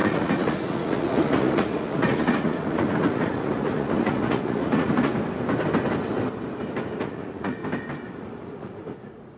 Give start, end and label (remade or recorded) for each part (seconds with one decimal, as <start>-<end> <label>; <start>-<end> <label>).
0.0-5.1 remade; 5.1-7.0 recorded; 7.0-7.6 remade; 7.6-8.2 recorded; 8.2-9.4 remade